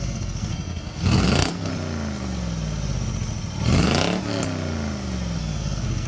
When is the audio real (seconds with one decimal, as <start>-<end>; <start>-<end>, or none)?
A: 1.7-5.4